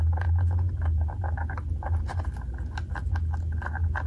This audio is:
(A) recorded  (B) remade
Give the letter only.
A